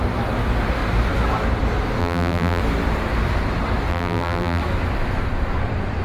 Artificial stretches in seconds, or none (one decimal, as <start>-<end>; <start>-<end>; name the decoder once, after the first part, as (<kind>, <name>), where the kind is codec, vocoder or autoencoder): 2.0-2.6 (vocoder, BigVGAN v2); 3.9-4.6